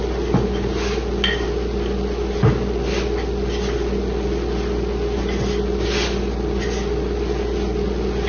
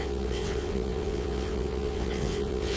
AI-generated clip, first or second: second